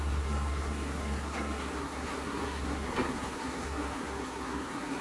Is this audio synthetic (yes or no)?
yes